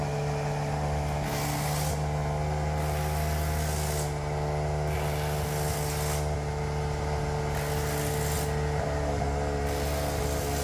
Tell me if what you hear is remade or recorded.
recorded